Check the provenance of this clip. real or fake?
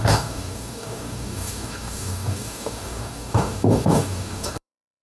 fake